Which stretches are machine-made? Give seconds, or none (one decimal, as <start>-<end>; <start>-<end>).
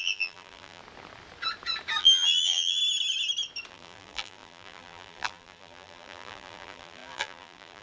0.0-0.8; 2.0-2.8; 3.7-7.8